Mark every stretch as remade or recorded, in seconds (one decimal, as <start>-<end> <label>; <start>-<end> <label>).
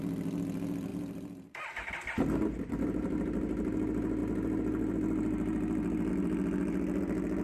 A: 0.0-0.9 recorded; 0.9-1.9 remade; 1.9-7.4 recorded